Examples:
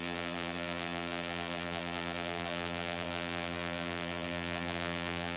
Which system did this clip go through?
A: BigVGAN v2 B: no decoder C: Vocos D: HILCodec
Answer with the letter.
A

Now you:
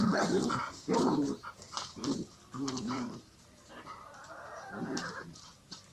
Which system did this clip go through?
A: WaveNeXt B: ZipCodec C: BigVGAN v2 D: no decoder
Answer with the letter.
C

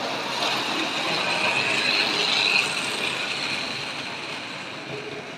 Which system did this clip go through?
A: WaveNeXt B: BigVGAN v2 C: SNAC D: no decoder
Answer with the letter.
D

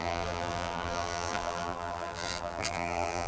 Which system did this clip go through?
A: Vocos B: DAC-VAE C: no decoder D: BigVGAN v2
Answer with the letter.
D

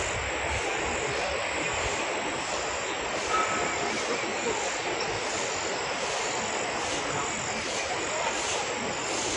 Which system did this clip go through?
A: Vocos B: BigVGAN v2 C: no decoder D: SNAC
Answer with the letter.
C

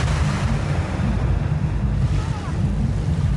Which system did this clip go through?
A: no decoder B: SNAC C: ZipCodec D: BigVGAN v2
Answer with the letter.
A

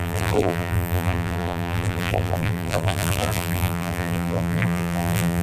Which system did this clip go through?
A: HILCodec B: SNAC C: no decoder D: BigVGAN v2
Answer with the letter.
D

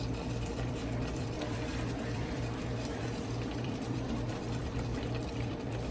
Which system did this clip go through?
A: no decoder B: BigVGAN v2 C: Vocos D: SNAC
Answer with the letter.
B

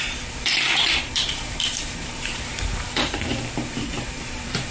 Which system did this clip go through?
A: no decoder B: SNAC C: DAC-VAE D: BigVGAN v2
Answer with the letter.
D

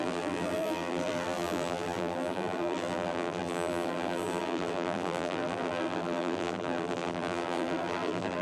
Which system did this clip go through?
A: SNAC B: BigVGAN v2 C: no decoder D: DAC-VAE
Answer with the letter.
B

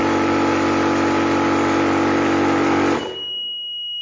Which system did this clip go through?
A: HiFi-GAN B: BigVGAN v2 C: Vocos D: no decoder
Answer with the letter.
D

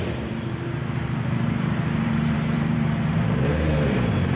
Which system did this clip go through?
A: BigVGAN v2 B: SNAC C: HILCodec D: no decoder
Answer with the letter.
A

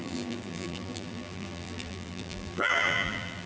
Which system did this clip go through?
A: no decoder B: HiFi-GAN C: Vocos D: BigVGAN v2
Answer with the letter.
D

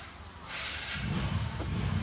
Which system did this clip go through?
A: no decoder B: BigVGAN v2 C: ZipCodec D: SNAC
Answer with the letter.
B